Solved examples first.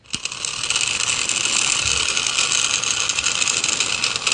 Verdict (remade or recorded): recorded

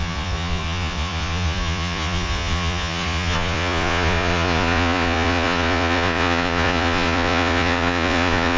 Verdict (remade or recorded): remade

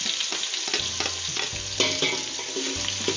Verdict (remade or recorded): recorded